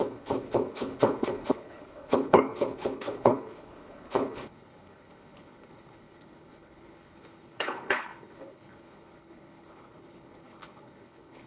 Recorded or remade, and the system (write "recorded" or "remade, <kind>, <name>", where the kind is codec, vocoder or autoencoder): remade, codec, HILCodec